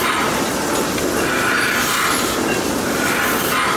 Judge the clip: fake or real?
real